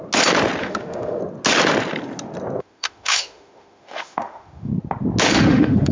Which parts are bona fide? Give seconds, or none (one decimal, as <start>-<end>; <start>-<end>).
0.0-0.6; 1.2-2.6; 4.7-5.3